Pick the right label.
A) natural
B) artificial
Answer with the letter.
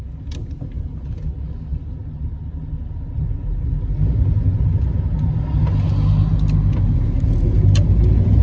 A